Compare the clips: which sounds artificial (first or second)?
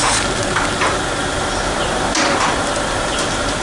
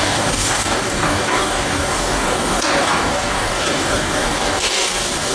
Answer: second